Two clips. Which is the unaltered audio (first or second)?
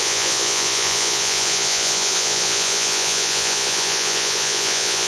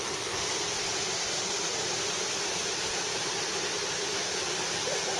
second